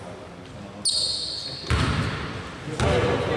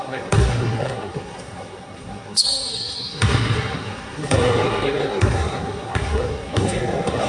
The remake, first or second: second